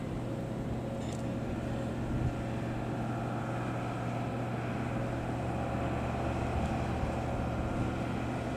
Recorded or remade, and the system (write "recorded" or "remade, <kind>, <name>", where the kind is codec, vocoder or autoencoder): recorded